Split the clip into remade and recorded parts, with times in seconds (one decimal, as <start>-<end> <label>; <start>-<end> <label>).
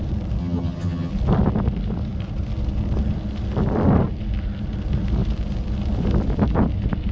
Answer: 0.0-0.4 recorded; 0.4-1.1 remade; 1.1-7.1 recorded